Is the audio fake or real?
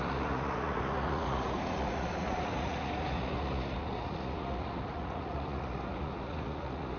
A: fake